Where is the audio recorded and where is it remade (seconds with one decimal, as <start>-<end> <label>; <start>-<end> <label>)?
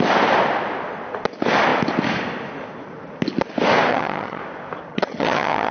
0.0-3.9 recorded; 3.9-4.4 remade; 4.4-4.9 recorded; 4.9-5.7 remade